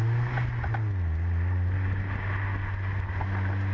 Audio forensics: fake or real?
real